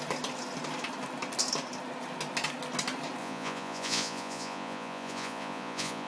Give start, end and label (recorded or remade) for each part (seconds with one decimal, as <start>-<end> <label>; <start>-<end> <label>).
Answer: 0.0-3.2 recorded; 3.2-6.1 remade